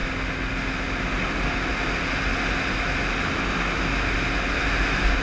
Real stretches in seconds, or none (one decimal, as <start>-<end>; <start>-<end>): 0.0-5.2